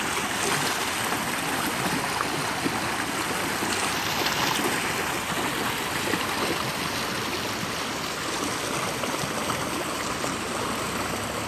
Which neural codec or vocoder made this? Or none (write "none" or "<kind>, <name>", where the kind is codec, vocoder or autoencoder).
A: none